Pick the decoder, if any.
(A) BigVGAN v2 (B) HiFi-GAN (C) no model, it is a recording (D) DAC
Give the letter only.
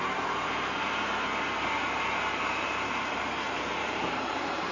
A